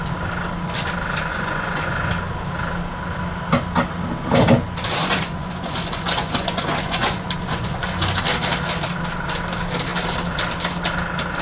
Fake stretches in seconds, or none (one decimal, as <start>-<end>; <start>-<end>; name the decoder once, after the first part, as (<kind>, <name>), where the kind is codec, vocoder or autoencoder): 1.3-2.1 (vocoder, Vocos); 4.8-8.2